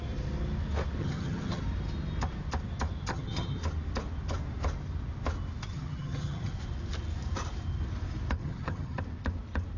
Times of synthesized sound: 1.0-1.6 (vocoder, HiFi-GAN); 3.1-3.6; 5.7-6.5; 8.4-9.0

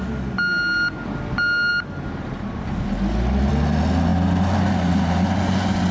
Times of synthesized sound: none

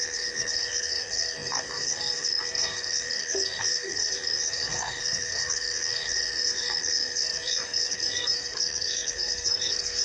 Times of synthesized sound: 0.0-10.0 (codec, SNAC)

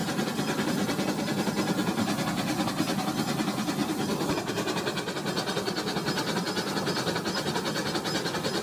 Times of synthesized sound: 3.8-4.5 (vocoder, BigVGAN v2)

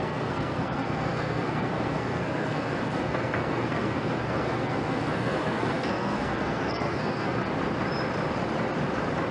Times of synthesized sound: 0.0-7.4 (codec, SNAC)

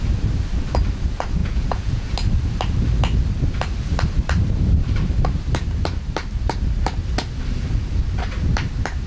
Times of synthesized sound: 1.4-2.1 (vocoder, Vocos)

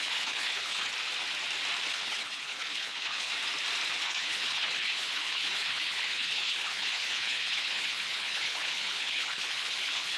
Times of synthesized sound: 0.0-0.9 (codec, HILCodec); 1.9-3.3; 4.0-10.2

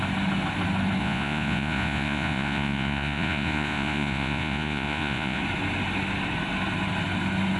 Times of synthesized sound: 1.0-5.4 (vocoder, Vocos)